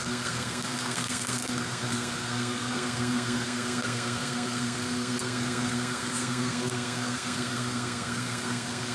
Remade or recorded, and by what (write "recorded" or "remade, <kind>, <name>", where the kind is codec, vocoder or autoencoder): remade, codec, SNAC